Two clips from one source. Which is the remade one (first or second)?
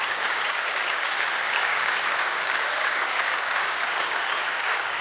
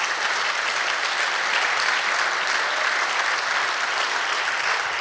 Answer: first